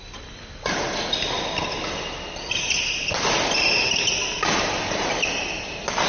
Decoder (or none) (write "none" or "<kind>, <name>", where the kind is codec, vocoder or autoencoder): none